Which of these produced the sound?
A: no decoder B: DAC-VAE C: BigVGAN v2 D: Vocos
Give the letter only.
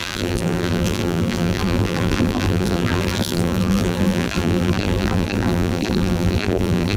C